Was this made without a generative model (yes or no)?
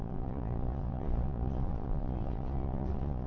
no